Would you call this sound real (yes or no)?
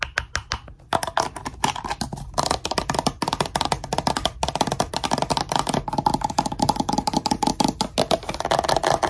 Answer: yes